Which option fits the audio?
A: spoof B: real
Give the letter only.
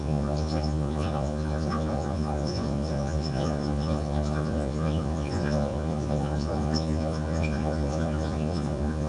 A